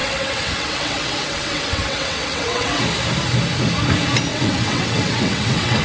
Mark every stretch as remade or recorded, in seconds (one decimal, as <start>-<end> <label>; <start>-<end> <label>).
0.0-2.8 remade; 2.8-4.3 recorded; 4.3-5.8 remade